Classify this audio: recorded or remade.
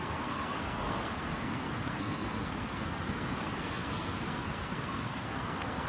remade